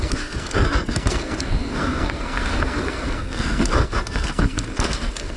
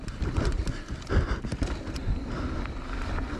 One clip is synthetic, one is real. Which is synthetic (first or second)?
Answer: first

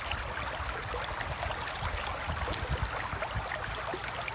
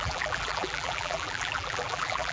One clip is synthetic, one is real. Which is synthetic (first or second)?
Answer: second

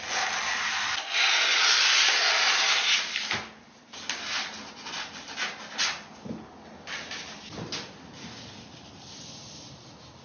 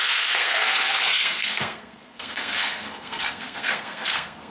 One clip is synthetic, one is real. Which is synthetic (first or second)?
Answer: second